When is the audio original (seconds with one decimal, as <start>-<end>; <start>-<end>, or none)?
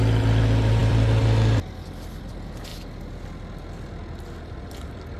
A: 0.0-0.8; 1.6-5.2